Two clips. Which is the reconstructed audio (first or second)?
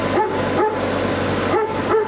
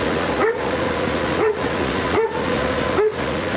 second